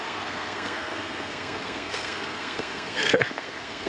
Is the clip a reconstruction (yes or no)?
yes